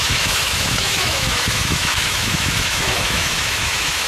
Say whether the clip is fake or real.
fake